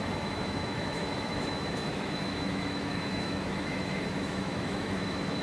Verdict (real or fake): fake